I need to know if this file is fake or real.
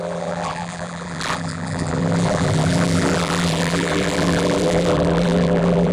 fake